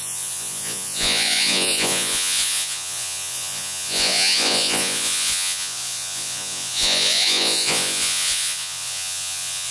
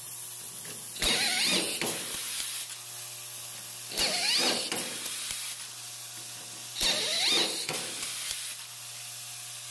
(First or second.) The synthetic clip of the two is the first